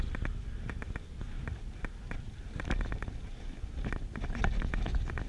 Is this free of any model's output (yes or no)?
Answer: yes